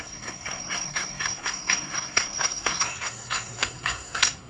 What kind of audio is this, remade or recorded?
remade